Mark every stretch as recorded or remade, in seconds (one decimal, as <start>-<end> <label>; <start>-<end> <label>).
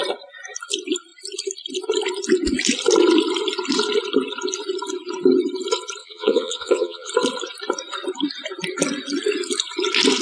0.0-6.0 recorded; 6.0-7.1 remade; 7.1-10.2 recorded